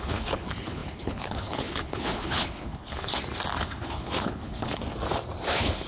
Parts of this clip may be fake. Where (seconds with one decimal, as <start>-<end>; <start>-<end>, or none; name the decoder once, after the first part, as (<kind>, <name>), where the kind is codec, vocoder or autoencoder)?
0.0-3.1 (codec, HILCodec); 3.6-4.8; 5.5-5.9